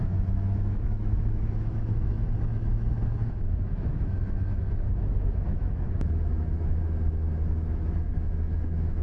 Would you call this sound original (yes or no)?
no